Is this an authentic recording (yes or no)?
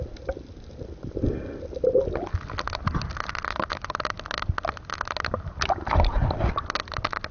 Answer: yes